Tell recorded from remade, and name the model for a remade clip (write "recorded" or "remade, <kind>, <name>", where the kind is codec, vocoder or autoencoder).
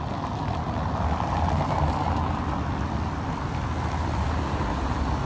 recorded